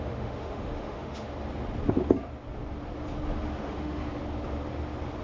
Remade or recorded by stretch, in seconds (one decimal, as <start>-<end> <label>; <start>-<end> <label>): 0.0-1.3 remade; 1.3-3.6 recorded; 3.6-4.0 remade; 4.0-5.2 recorded